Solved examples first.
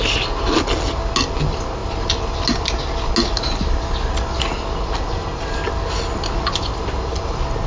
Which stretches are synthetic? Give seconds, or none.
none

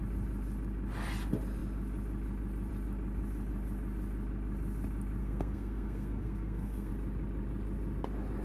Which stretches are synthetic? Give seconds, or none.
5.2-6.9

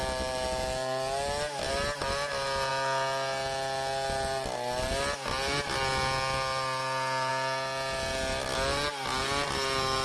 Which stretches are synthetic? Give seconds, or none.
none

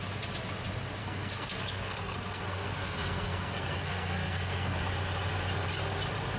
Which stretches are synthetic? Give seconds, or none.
1.0-4.8